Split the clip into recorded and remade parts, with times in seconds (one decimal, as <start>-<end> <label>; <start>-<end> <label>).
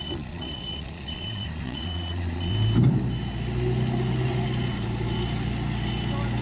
0.0-2.5 remade; 2.5-6.4 recorded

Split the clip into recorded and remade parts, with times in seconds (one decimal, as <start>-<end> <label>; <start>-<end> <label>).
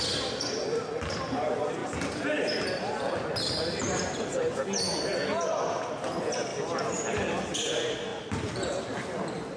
0.0-9.6 recorded